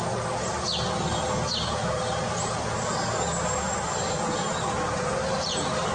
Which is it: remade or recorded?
recorded